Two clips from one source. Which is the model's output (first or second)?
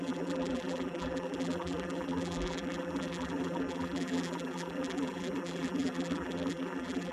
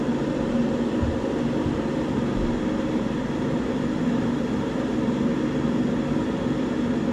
first